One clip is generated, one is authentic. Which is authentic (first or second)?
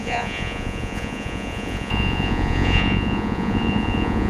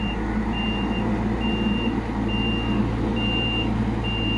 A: second